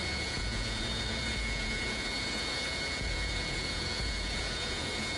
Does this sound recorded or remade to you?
remade